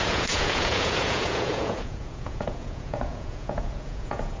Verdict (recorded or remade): remade